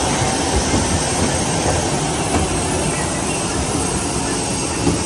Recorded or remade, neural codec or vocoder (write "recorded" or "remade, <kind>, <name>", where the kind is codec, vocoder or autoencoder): recorded